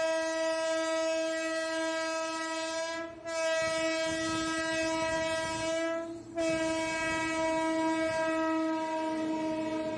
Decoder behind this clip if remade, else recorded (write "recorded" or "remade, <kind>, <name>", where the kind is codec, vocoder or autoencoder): recorded